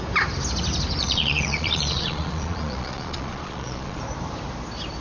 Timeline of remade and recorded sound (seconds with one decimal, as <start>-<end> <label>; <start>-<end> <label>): 0.0-1.0 recorded; 1.0-4.0 remade; 4.0-5.0 recorded